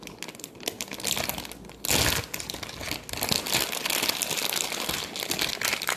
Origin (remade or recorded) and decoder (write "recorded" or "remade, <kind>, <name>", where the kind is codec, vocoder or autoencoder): recorded